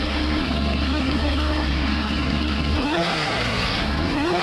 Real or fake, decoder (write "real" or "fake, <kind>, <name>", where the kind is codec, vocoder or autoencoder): fake, codec, SNAC